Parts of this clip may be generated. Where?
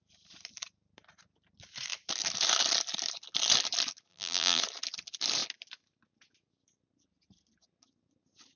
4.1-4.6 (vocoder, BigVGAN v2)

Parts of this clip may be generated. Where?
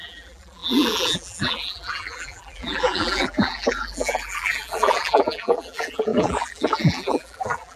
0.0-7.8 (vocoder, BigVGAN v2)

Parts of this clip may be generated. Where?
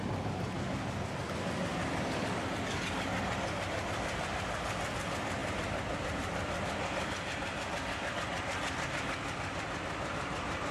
1.7-2.3 (vocoder, BigVGAN v2); 5.4-8.1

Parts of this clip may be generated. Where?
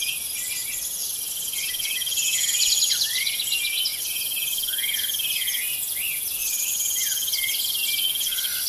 1.0-3.2 (vocoder, BigVGAN v2); 3.9-5.7; 6.4-7.8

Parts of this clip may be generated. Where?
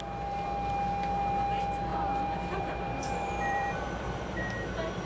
1.9-4.4 (vocoder, BigVGAN v2)